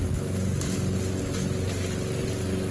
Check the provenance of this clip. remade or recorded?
recorded